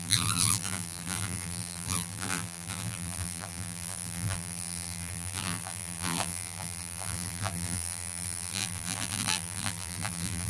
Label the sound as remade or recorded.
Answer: remade